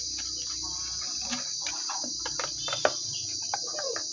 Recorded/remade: recorded